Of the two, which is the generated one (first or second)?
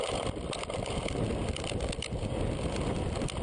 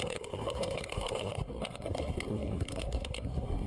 second